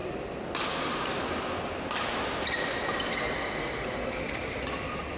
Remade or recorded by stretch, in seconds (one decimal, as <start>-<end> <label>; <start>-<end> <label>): 0.0-5.2 recorded

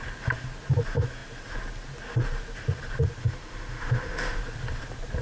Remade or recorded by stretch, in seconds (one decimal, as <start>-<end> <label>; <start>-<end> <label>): 0.0-3.2 recorded; 3.2-4.4 remade; 4.4-5.2 recorded

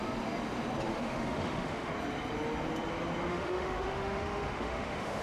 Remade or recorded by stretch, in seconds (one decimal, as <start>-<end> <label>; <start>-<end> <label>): 0.0-0.9 recorded; 0.9-1.9 remade; 1.9-3.3 recorded; 3.3-5.2 remade

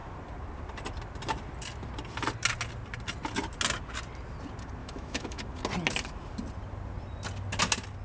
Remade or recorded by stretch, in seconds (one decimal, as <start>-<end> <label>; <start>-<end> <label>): 0.0-4.8 recorded; 4.8-5.4 remade; 5.4-8.0 recorded

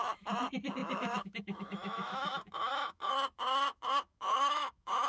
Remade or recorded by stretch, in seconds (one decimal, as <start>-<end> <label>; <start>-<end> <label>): 0.0-5.1 remade

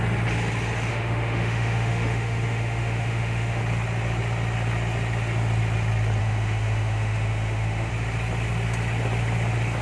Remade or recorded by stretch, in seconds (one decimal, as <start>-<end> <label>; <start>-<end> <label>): 0.0-0.9 recorded; 0.9-3.6 remade; 3.6-6.2 recorded; 6.2-7.9 remade; 7.9-9.8 recorded